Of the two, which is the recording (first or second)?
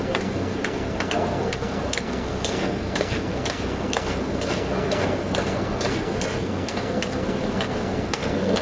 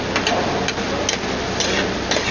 second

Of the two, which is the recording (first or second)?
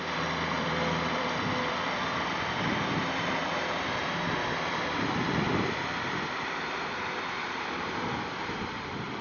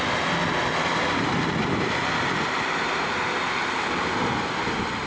second